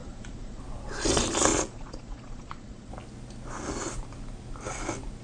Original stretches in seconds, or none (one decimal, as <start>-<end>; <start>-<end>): 0.6-1.5; 2.9-5.2